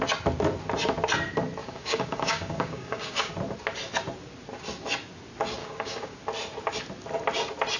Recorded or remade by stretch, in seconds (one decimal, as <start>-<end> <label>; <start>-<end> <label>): 0.0-1.6 recorded; 1.6-3.3 remade; 3.3-5.6 recorded; 5.6-6.2 remade; 6.2-7.8 recorded